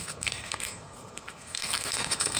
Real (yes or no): no